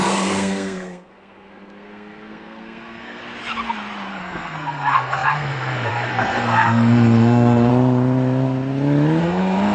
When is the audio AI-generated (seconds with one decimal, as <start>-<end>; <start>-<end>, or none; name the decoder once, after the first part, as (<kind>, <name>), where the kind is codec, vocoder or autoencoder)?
0.0-3.2 (codec, SNAC); 4.1-7.7; 9.2-9.7